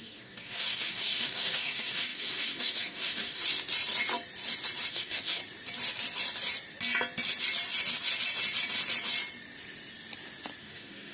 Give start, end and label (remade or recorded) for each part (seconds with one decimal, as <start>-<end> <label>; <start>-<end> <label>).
0.0-3.4 remade; 3.4-4.9 recorded; 4.9-5.4 remade; 5.4-10.6 recorded; 10.6-11.1 remade